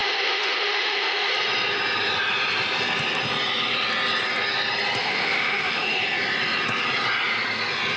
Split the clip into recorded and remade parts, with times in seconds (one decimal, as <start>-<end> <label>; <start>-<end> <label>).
0.0-1.3 remade; 1.3-5.0 recorded; 5.0-6.0 remade; 6.0-8.0 recorded